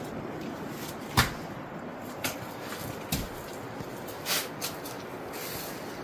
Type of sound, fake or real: real